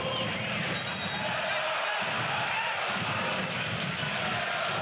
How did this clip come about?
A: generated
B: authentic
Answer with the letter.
B